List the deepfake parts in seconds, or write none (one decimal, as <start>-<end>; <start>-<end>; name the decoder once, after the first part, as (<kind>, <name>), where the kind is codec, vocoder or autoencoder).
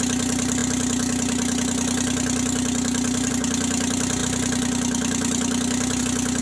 none